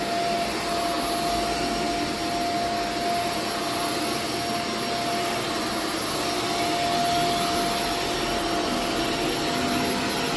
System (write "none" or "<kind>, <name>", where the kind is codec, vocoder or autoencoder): none